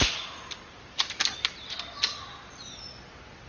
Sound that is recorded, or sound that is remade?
recorded